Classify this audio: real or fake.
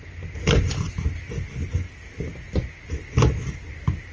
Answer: real